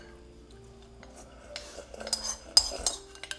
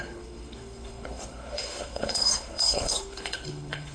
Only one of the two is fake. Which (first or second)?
second